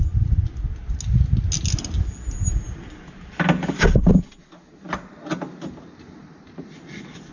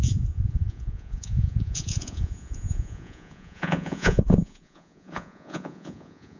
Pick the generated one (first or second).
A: second